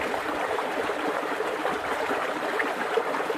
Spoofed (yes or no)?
no